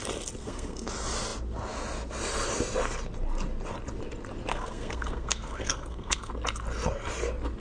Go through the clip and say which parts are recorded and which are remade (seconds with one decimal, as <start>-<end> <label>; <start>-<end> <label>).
0.0-0.4 recorded; 0.4-0.9 remade; 0.9-4.5 recorded; 4.5-6.3 remade; 6.3-7.6 recorded